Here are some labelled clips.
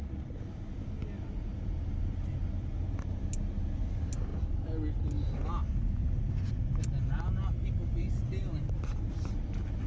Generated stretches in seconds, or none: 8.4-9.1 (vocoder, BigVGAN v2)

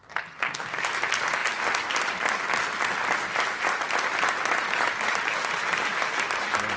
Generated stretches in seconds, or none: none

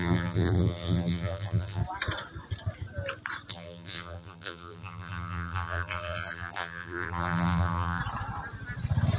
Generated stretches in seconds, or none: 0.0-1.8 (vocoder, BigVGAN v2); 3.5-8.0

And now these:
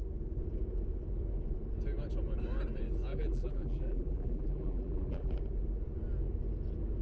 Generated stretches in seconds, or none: 3.1-5.3 (vocoder, BigVGAN v2)